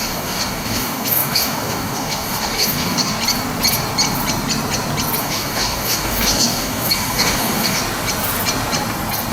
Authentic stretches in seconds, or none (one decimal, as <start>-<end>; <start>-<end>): 3.1-5.2; 7.8-9.3